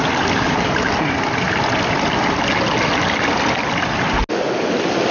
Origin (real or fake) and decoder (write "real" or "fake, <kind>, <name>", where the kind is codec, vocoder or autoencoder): real